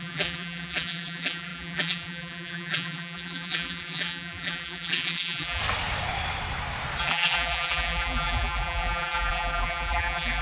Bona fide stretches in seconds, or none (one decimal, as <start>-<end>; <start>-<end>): 5.6-7.0

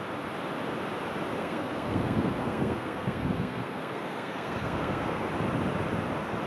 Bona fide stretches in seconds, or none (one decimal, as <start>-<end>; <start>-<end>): 0.0-1.4; 5.3-6.5

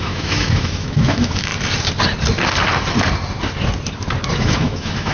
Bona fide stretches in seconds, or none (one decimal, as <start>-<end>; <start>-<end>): 1.5-4.4